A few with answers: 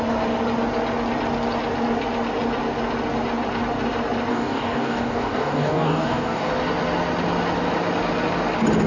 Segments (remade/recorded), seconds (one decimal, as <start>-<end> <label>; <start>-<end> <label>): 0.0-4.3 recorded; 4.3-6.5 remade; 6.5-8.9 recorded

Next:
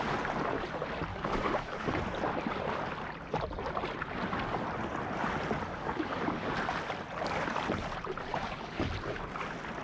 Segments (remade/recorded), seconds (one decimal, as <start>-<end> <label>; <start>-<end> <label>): 0.0-1.1 recorded; 1.1-1.9 remade; 1.9-5.7 recorded; 5.7-6.5 remade; 6.5-8.3 recorded; 8.3-8.9 remade; 8.9-9.8 recorded

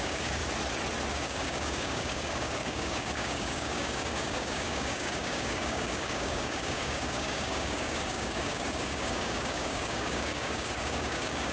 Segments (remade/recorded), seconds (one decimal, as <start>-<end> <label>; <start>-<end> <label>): 0.0-0.4 remade; 0.4-1.1 recorded; 1.1-11.5 remade

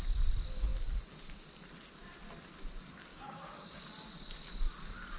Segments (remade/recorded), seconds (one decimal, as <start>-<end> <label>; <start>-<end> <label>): 0.0-3.1 recorded; 3.1-3.8 remade; 3.8-5.2 recorded

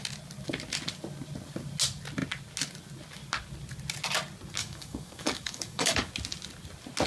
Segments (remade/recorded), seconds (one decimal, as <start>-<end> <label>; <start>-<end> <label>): 0.0-4.6 recorded; 4.6-6.1 remade; 6.1-7.1 recorded